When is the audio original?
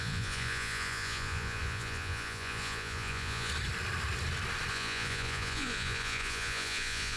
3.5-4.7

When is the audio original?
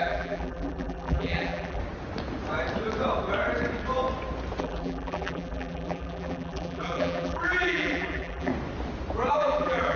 1.8-4.6; 8.5-9.3